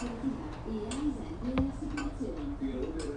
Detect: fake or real real